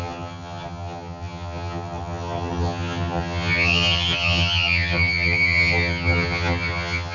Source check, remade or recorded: remade